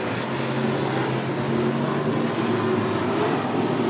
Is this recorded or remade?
recorded